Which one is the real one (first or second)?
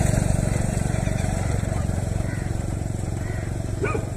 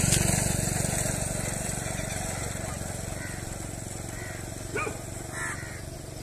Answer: second